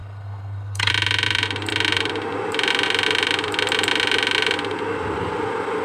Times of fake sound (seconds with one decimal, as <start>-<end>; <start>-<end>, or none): 0.0-0.9